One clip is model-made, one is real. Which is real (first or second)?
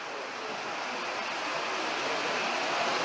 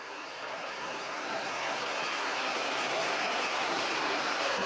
first